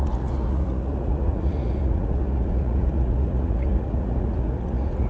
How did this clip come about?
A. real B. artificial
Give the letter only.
B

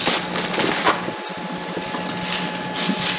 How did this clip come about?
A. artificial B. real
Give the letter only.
B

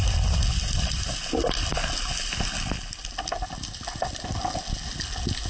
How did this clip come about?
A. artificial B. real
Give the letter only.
B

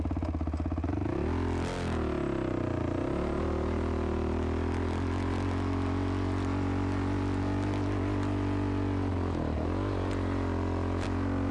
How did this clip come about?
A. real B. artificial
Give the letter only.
A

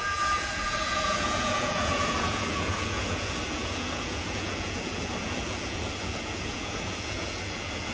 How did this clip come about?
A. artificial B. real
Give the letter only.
A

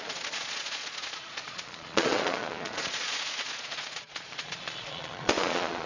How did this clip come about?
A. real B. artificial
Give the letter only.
B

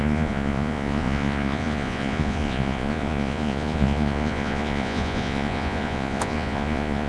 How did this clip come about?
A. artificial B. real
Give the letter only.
A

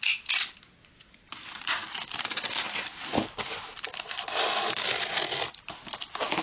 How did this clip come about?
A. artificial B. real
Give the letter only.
B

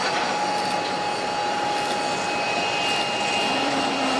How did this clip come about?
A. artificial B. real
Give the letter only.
B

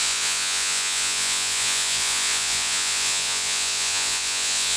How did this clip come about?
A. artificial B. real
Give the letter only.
A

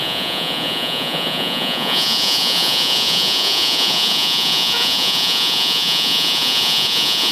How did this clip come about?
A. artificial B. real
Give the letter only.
A